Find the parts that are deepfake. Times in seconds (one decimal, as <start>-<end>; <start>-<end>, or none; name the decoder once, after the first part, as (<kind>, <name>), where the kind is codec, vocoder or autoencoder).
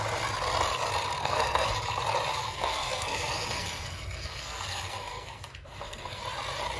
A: 1.2-1.7 (codec, SNAC); 2.3-6.2